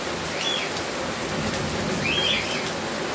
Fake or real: real